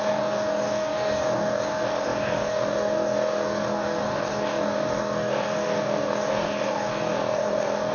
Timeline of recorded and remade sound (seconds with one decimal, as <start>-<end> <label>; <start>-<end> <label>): 0.0-7.9 remade